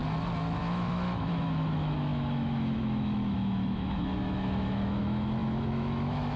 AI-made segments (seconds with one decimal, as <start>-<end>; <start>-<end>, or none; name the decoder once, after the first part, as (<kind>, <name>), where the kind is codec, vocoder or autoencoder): 0.6-6.4 (autoencoder, DAC-VAE)